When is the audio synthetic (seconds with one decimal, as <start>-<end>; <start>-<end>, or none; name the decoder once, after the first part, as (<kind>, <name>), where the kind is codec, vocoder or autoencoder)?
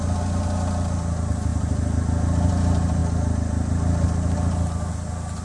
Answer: none